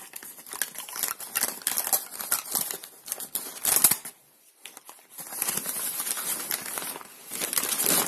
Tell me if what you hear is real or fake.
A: real